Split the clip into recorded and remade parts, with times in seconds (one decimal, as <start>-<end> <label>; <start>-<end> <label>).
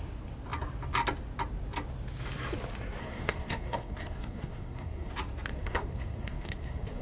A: 0.0-3.0 recorded; 3.0-5.1 remade; 5.1-5.5 recorded; 5.5-7.0 remade